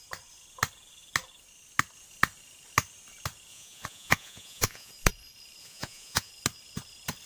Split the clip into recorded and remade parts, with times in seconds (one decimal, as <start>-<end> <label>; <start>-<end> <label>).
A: 0.0-3.5 recorded; 3.5-4.9 remade; 4.9-5.6 recorded; 5.6-6.3 remade; 6.3-7.3 recorded